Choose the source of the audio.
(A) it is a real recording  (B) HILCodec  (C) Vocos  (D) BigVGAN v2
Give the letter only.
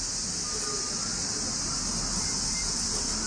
A